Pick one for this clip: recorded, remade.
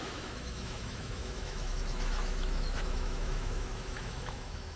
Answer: remade